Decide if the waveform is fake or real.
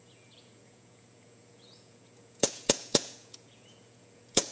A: fake